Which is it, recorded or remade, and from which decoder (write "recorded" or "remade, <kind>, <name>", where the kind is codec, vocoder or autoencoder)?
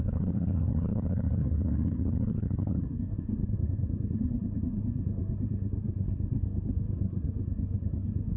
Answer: remade, codec, SNAC